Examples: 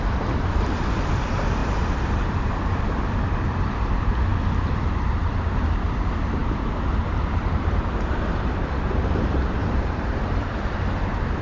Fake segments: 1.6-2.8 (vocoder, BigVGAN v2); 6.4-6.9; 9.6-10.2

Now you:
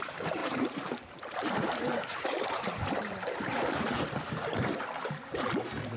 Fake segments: 0.0-6.0 (vocoder, BigVGAN v2)